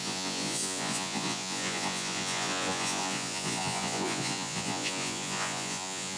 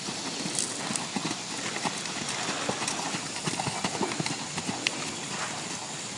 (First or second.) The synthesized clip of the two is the first